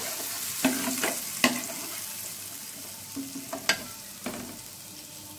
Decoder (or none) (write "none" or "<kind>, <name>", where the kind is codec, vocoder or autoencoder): none